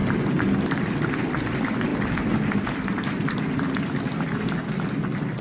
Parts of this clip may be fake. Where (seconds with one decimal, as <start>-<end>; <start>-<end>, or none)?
none